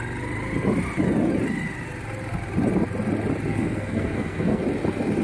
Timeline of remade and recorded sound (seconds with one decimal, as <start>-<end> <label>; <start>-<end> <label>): 0.0-3.5 recorded; 3.5-4.6 remade; 4.6-5.2 recorded